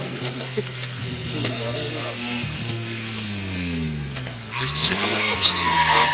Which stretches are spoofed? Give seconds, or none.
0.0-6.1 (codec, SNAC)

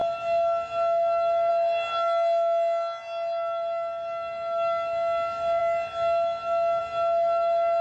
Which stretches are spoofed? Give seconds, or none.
none